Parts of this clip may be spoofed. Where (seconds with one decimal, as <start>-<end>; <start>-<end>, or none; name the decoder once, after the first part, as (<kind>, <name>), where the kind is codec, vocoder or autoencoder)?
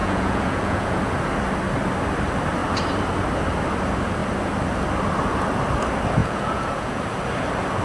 0.0-1.0 (vocoder, Vocos); 6.2-7.0